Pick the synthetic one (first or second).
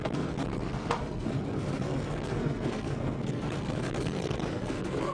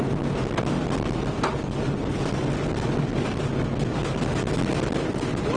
first